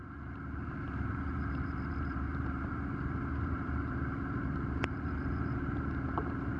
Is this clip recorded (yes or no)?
no